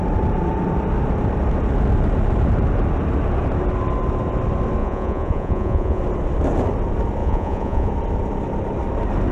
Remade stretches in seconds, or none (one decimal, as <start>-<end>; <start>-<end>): 4.8-6.0; 7.2-7.9